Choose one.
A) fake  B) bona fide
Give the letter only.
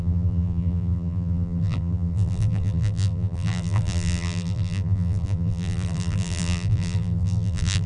A